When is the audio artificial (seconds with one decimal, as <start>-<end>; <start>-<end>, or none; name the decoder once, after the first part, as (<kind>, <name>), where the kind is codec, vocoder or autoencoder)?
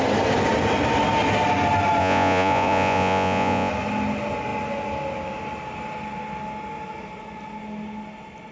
2.0-3.7 (vocoder, Vocos)